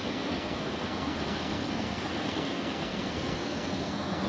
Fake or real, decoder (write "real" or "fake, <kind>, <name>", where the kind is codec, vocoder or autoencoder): fake, codec, SNAC